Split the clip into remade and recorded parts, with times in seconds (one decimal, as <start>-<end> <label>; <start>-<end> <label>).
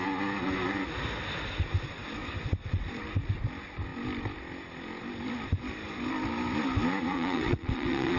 0.0-7.1 recorded; 7.1-8.2 remade